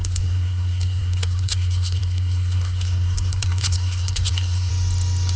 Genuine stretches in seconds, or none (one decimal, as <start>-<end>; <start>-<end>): 4.7-5.4